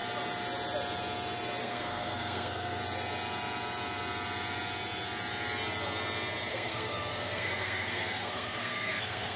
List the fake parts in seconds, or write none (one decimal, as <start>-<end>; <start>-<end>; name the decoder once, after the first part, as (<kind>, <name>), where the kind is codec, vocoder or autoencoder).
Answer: 1.6-2.8 (codec, SNAC); 6.5-9.4